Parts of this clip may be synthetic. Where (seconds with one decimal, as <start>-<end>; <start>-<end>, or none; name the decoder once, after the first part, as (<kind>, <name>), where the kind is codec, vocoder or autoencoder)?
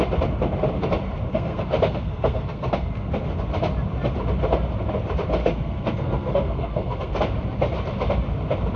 1.3-3.1 (codec, SNAC); 5.4-7.2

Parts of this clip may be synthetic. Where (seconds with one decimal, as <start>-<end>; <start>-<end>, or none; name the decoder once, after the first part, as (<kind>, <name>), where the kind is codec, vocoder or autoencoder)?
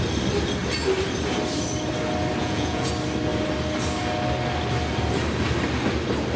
2.4-2.9 (vocoder, Vocos)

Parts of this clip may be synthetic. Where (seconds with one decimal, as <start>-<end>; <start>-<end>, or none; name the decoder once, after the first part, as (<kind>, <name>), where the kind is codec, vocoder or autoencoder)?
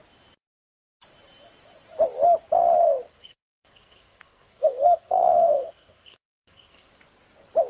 3.1-6.9 (codec, SNAC)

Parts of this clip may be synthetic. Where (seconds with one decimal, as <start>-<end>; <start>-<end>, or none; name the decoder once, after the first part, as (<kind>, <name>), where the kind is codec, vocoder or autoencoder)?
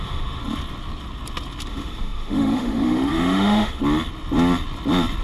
0.0-0.4 (autoencoder, DAC-VAE); 1.7-3.8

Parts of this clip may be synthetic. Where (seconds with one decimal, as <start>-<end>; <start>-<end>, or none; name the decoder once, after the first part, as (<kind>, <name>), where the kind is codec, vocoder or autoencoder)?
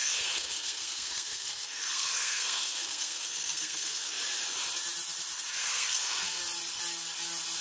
0.0-4.1 (codec, SNAC); 5.6-6.4